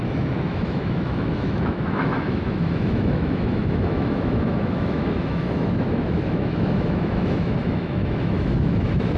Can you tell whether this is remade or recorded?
remade